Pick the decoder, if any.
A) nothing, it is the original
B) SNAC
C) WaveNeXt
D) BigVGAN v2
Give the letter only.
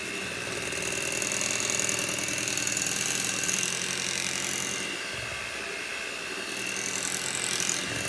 A